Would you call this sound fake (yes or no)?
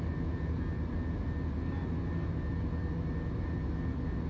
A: no